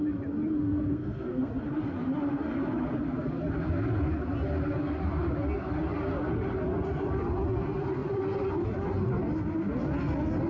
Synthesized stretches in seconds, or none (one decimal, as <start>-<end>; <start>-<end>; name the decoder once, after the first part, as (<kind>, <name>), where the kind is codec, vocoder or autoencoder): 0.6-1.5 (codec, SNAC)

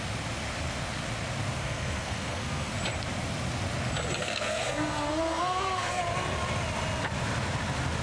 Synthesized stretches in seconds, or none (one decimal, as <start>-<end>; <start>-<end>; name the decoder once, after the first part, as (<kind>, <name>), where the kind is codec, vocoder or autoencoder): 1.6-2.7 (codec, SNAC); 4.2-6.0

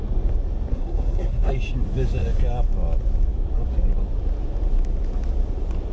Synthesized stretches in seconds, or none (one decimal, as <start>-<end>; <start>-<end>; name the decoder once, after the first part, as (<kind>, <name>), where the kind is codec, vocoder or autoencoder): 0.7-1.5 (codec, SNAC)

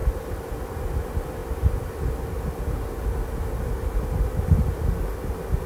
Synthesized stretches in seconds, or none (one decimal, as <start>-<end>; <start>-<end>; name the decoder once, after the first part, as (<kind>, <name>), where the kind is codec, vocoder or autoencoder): none

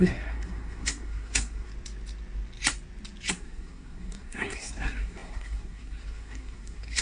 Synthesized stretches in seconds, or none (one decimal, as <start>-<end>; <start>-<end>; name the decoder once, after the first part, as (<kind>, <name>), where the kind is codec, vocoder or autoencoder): 0.0-1.7 (codec, SNAC); 3.3-7.0